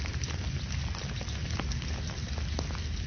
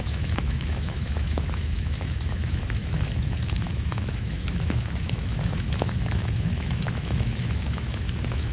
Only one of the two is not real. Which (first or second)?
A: second